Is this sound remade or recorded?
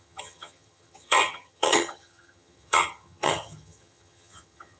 remade